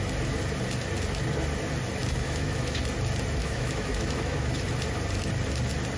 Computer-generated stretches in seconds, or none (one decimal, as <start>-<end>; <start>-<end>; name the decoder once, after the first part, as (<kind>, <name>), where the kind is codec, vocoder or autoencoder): 2.0-2.8 (autoencoder, DAC-VAE); 3.4-4.7